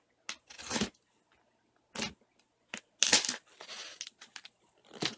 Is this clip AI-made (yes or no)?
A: no